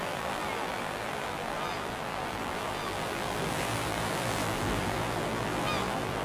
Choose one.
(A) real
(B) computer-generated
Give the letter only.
B